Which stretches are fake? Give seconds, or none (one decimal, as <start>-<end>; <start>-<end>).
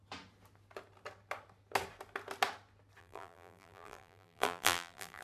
3.0-5.2